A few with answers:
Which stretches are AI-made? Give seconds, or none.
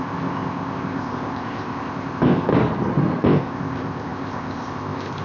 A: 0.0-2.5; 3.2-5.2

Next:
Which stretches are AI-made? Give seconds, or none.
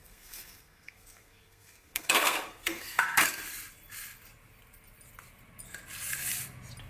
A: 0.0-3.2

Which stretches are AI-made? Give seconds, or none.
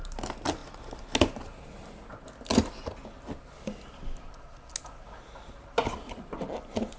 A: none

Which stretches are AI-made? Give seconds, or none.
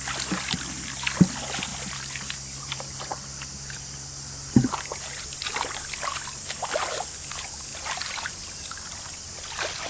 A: none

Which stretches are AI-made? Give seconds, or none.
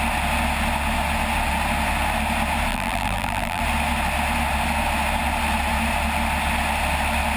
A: 2.7-3.6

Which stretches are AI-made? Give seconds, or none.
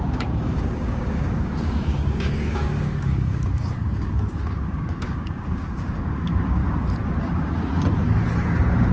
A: 0.0-6.6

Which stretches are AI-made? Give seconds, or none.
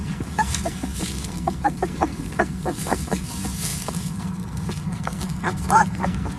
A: 0.0-6.4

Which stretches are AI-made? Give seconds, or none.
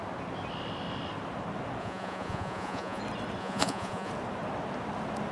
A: 1.8-3.0; 3.4-4.1